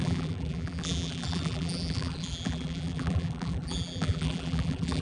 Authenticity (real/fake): fake